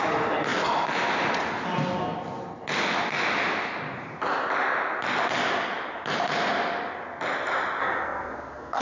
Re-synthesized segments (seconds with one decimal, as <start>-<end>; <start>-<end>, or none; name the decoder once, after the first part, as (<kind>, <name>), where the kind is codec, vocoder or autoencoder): 7.8-8.8 (codec, SNAC)